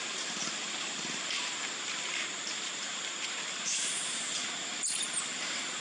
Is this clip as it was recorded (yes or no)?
yes